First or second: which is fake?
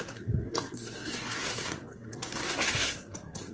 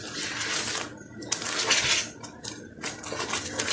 first